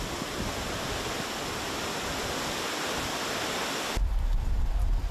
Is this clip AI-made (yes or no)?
no